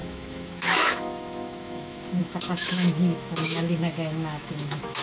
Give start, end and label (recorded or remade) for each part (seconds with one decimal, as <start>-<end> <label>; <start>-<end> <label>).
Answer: 0.0-5.0 remade